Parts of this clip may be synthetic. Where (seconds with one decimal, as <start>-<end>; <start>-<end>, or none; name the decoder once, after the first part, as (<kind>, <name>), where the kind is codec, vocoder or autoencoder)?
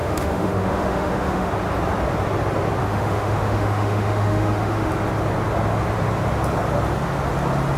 0.0-1.5 (autoencoder, DAC-VAE); 2.8-4.9